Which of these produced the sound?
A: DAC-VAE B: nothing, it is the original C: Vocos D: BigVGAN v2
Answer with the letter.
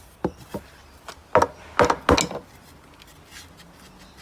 B